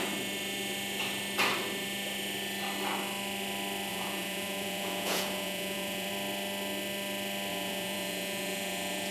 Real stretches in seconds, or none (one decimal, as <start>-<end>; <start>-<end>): 0.0-3.9; 6.1-7.5